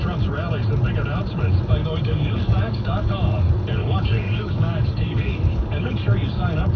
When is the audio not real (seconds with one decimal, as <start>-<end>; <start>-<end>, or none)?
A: 1.8-3.1; 3.8-6.8